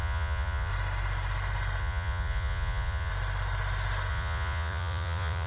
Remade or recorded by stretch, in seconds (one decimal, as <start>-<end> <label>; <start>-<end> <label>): 0.0-0.7 remade; 0.7-1.8 recorded; 1.8-3.1 remade; 3.1-4.1 recorded; 4.1-5.5 remade